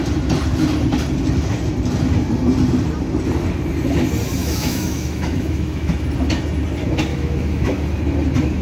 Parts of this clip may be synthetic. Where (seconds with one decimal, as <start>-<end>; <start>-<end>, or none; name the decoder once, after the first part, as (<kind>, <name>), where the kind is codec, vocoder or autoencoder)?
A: 4.4-5.9 (autoencoder, DAC-VAE); 7.1-7.8